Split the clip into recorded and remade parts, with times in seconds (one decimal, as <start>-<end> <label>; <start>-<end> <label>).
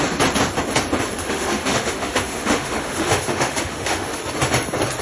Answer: 0.0-1.2 recorded; 1.2-4.2 remade; 4.2-5.0 recorded